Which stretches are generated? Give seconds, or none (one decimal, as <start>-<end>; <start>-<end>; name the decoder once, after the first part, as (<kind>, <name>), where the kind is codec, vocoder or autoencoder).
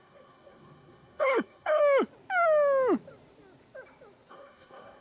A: 0.0-1.8 (codec, SNAC); 4.3-5.0